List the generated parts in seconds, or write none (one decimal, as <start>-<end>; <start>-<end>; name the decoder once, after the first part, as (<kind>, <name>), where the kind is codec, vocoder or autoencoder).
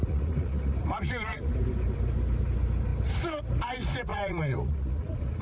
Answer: 0.0-1.5 (vocoder, Vocos); 4.1-5.4